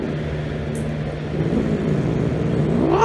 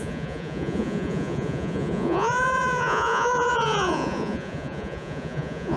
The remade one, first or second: second